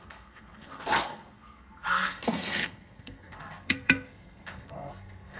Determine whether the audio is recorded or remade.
remade